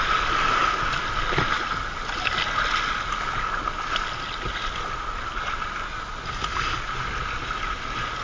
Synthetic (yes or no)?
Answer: no